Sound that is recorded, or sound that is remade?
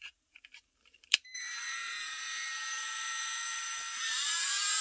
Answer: remade